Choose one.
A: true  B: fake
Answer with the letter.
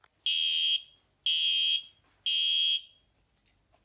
A